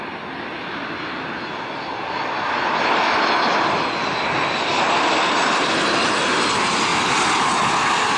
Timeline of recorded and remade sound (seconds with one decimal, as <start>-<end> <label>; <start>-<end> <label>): 0.0-8.2 recorded